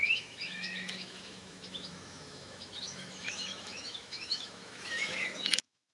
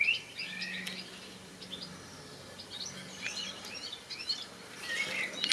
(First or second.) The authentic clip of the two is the second